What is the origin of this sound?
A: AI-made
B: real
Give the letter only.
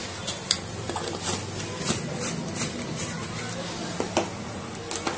B